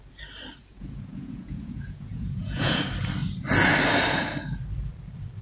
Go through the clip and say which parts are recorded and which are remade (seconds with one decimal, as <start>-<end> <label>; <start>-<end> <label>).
0.0-0.7 recorded; 0.7-2.8 remade; 2.8-5.4 recorded